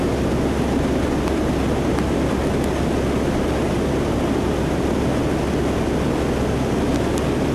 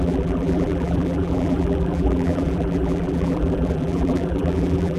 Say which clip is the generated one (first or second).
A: second